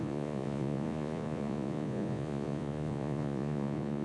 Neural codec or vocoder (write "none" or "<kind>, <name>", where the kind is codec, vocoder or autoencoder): vocoder, Vocos